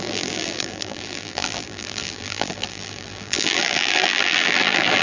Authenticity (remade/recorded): remade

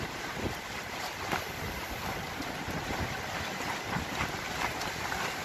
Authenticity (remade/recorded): recorded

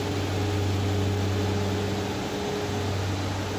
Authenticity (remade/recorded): recorded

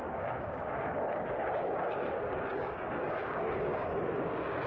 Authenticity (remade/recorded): remade